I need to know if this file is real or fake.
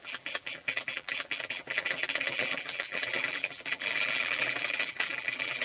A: fake